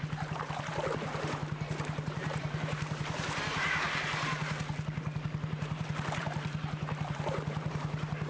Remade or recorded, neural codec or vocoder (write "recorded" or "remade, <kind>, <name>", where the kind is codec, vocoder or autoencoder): remade, vocoder, BigVGAN v2